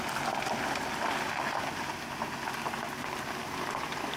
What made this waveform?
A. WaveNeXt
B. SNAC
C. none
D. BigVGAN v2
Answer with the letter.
C